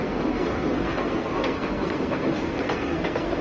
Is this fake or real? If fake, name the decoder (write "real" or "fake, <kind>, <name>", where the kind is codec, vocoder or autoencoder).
fake, codec, SNAC